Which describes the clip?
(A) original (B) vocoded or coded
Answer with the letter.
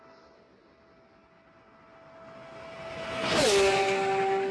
A